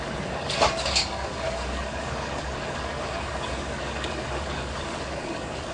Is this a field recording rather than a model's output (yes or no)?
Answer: no